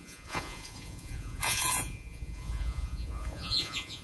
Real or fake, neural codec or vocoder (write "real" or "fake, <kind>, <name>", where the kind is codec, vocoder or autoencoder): fake, vocoder, Vocos